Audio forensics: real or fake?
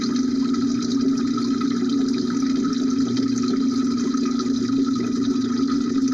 real